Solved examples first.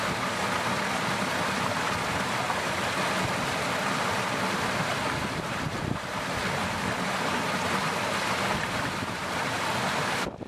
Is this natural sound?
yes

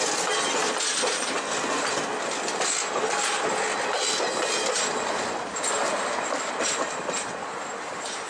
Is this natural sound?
yes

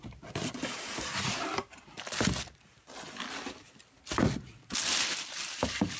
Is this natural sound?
yes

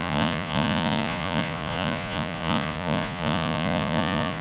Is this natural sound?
no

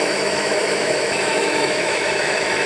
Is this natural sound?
no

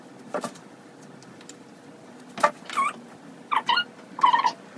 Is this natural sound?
yes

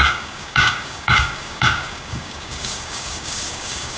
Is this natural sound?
no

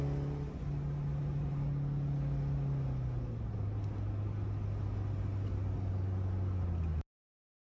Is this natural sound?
yes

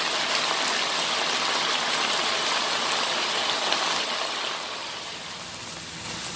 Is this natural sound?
yes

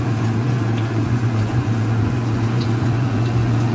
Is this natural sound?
no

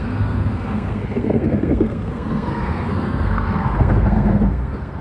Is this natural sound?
no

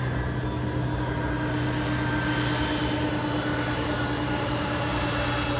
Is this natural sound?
yes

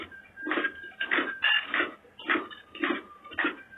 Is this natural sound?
yes